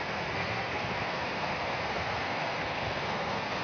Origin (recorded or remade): remade